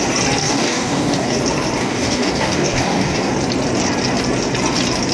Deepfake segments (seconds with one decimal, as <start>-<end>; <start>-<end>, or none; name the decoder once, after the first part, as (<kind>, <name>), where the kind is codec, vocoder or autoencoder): 0.4-1.4 (codec, DAC); 1.8-3.3